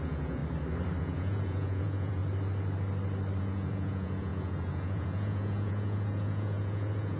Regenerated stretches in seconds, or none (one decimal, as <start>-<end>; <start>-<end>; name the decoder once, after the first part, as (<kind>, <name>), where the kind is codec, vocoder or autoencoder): 0.0-0.4 (vocoder, Vocos); 1.0-2.2; 3.4-7.2